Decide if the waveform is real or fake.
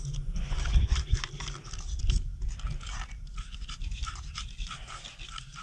real